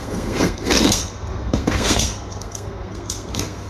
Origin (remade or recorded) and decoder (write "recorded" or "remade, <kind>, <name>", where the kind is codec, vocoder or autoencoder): remade, codec, SNAC